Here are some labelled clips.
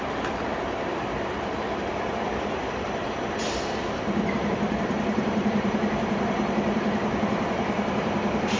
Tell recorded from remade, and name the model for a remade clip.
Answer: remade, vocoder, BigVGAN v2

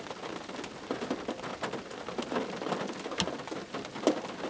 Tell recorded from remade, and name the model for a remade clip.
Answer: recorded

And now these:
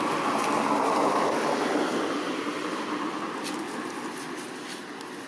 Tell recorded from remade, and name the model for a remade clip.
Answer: recorded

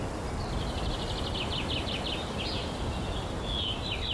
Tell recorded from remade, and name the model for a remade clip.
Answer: recorded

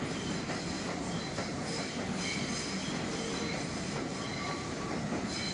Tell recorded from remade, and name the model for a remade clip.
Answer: recorded